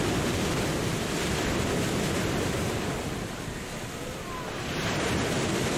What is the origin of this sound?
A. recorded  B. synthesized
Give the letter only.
A